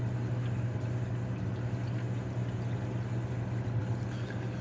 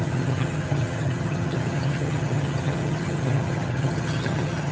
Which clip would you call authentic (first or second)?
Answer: first